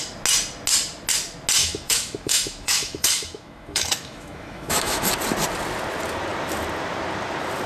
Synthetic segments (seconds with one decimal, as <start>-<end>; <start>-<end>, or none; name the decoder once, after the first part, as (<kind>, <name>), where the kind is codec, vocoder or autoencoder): 1.6-5.1 (autoencoder, DAC-VAE)